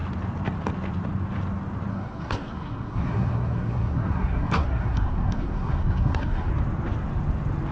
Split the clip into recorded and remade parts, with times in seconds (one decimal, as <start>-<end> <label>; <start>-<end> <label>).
0.0-1.9 recorded; 1.9-6.5 remade; 6.5-7.7 recorded